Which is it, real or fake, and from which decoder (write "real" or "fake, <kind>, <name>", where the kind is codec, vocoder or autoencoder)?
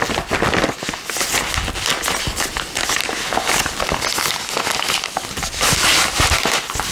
real